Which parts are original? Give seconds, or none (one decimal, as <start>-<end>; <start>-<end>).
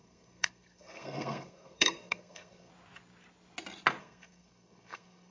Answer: 2.7-4.0